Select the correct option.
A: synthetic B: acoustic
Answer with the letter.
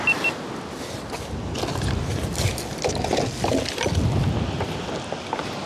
B